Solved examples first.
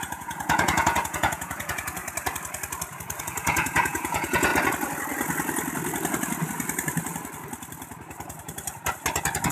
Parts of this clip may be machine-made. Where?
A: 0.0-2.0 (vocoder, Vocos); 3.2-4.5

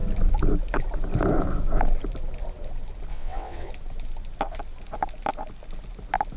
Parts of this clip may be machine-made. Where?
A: 3.1-3.7 (vocoder, WaveNeXt)